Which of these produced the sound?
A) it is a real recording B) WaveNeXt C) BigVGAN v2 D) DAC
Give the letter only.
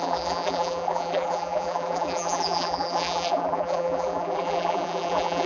C